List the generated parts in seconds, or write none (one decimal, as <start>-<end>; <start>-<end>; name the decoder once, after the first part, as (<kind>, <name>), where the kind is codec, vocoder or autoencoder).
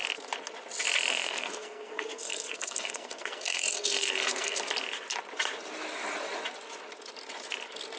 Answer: 1.1-4.6 (codec, SNAC)